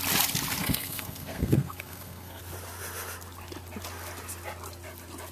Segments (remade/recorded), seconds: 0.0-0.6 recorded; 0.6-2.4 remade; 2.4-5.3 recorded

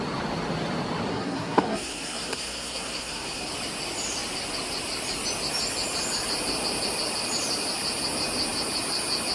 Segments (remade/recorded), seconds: 0.0-1.1 recorded; 1.1-3.5 remade; 3.5-9.3 recorded